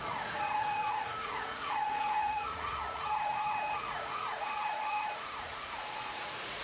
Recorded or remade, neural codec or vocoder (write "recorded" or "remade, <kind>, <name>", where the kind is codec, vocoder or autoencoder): remade, vocoder, Vocos